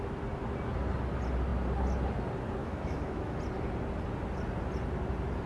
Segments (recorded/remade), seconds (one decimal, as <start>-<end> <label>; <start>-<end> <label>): 0.0-2.6 recorded; 2.6-3.4 remade; 3.4-5.5 recorded